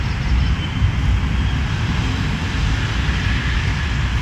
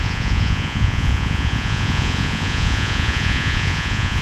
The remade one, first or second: second